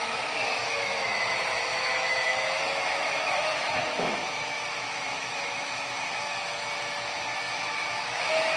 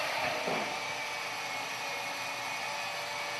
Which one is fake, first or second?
first